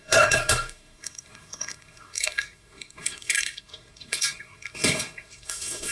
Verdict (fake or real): fake